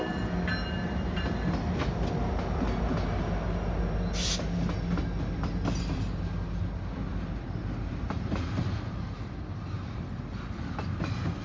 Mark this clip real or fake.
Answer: real